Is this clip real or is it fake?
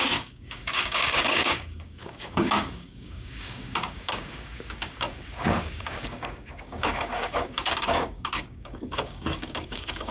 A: fake